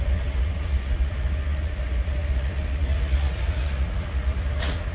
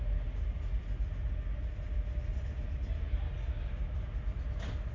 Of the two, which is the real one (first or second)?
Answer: second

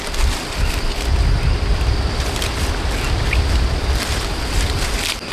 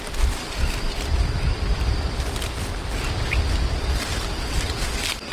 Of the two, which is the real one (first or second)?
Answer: first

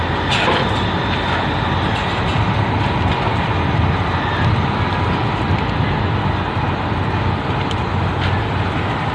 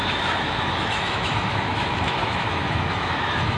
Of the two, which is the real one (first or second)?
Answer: first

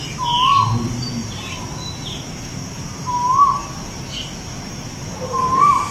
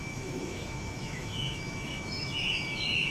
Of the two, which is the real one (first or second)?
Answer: first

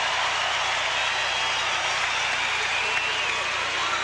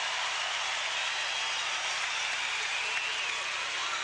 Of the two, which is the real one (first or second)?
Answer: first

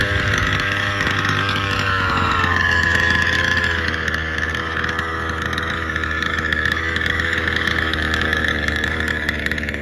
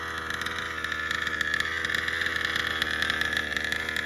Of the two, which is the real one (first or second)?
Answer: second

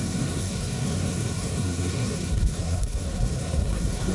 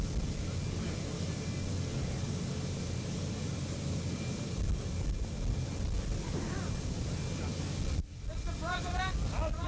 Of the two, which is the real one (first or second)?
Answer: second